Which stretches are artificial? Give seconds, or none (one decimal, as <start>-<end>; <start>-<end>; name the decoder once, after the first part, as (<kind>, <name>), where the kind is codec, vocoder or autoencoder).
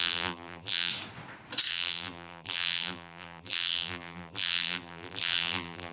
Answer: 0.0-0.9 (vocoder, BigVGAN v2); 1.7-5.9